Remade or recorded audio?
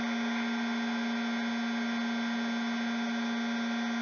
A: recorded